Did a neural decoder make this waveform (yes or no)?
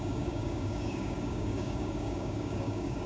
yes